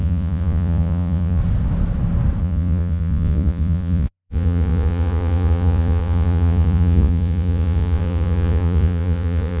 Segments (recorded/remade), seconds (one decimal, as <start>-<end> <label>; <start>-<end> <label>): 0.0-1.4 remade; 1.4-2.4 recorded; 2.4-9.6 remade